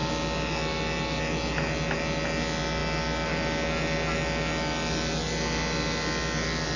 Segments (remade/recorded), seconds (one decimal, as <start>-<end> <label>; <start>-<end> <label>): 0.0-6.8 recorded